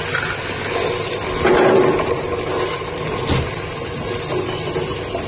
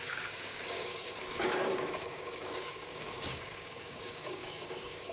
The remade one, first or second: second